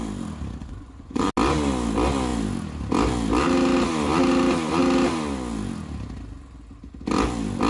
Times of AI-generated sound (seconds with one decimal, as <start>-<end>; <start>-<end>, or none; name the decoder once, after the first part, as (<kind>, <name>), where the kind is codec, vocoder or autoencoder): 0.6-1.3 (vocoder, Vocos)